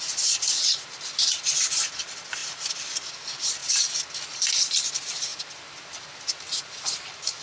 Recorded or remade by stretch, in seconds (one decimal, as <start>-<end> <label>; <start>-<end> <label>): 0.0-7.4 recorded